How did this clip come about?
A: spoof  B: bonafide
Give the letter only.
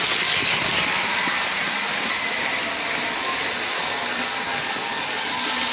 B